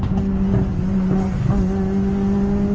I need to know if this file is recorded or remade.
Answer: recorded